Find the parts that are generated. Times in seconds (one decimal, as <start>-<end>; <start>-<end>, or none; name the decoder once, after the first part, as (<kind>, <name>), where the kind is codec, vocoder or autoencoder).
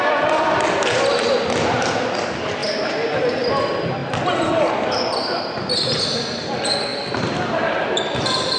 6.9-8.0 (vocoder, BigVGAN v2)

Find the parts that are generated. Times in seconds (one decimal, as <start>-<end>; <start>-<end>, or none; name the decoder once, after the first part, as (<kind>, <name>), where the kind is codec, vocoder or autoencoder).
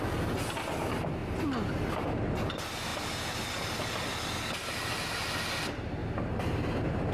6.0-7.1 (vocoder, BigVGAN v2)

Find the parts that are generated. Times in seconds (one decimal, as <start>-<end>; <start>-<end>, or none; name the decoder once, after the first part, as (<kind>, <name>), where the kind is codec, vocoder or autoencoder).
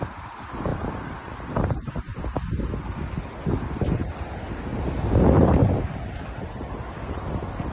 none